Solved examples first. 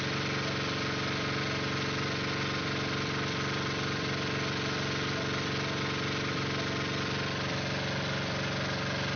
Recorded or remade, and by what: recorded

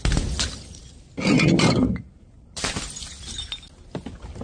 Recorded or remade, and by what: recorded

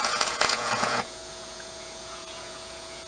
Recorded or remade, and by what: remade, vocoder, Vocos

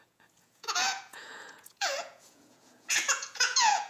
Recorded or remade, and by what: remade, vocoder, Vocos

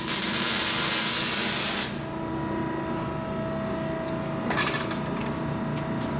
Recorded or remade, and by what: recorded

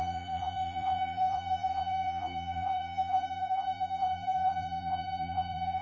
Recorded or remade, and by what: remade, vocoder, Vocos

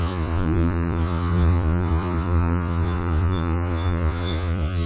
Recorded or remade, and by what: remade, vocoder, Vocos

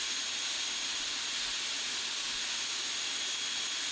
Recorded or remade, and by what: recorded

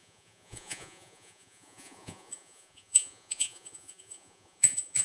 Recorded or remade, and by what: remade, vocoder, Vocos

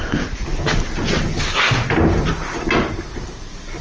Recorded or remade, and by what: recorded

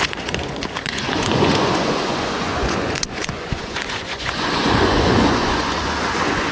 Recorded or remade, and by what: remade, vocoder, Vocos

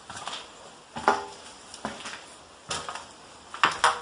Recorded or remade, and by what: recorded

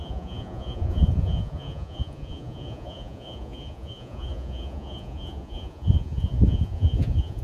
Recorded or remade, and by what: remade, vocoder, Vocos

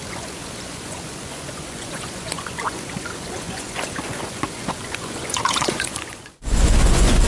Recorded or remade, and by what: remade, vocoder, Vocos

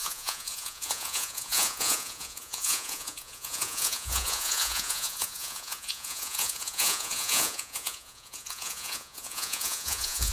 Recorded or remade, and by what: remade, vocoder, Vocos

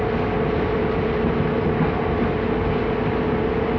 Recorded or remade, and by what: recorded